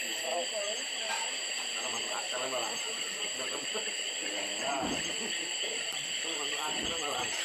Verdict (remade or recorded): remade